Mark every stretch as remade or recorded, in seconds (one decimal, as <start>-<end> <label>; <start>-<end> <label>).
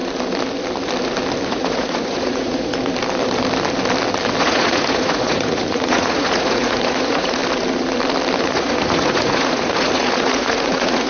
0.0-1.5 recorded; 1.5-2.7 remade; 2.7-4.4 recorded; 4.4-7.4 remade; 7.4-8.4 recorded; 8.4-11.1 remade